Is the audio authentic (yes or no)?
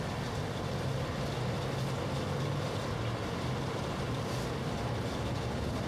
yes